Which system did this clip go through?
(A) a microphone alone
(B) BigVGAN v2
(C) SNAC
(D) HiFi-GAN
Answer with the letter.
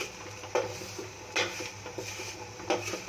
A